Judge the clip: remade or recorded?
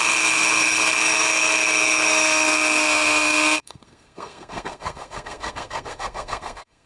remade